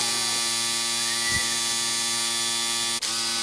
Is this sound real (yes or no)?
yes